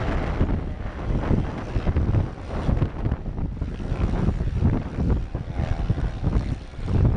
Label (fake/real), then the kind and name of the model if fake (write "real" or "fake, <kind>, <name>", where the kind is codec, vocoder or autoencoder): real